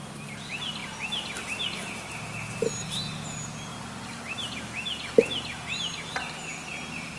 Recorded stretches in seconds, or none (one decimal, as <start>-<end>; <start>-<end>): 0.0-7.2